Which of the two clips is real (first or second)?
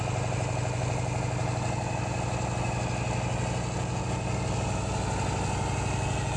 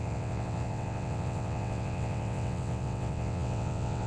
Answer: first